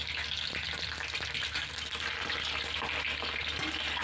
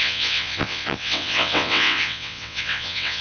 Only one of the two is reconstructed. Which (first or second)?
second